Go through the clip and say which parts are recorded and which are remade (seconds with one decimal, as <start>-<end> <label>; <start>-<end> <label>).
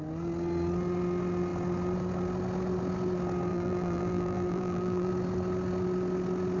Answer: 0.0-3.5 recorded; 3.5-5.1 remade; 5.1-6.6 recorded